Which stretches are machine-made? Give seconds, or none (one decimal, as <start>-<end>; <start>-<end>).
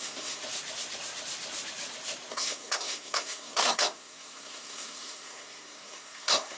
0.0-0.4; 2.3-6.6